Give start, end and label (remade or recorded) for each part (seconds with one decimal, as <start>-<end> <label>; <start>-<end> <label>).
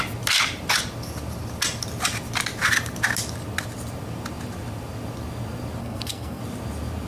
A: 0.0-5.8 recorded; 5.8-6.4 remade; 6.4-7.1 recorded